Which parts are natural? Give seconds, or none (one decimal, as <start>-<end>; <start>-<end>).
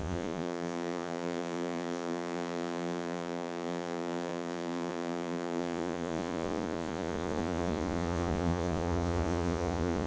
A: none